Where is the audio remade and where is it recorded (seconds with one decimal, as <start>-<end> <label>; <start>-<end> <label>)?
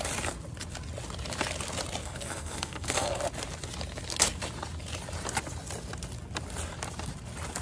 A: 0.0-2.0 recorded; 2.0-3.2 remade; 3.2-7.6 recorded